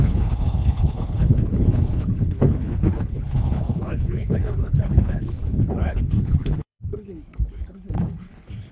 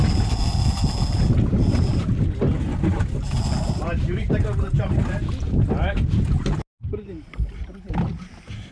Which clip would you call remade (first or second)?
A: first